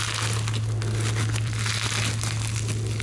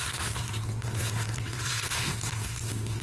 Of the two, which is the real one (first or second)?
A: first